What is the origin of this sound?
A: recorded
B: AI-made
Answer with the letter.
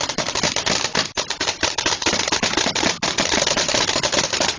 B